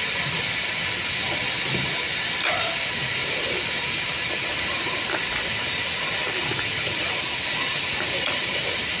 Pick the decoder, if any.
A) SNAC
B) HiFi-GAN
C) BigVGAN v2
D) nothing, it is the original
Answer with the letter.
D